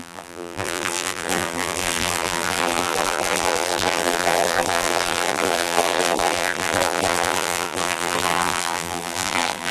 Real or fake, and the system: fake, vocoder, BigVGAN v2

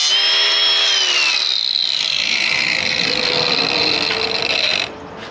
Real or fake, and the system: real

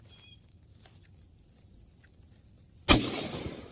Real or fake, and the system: real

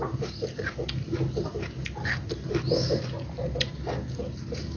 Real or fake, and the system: real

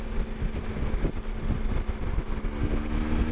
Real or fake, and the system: real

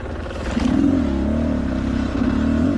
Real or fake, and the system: real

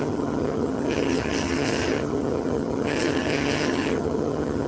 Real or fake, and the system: fake, vocoder, HiFi-GAN